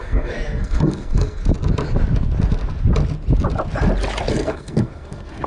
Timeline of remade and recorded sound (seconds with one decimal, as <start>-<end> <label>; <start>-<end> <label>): 0.0-1.4 remade; 1.4-4.3 recorded; 4.3-5.5 remade